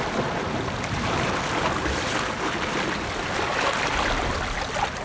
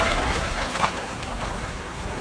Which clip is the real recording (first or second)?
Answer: first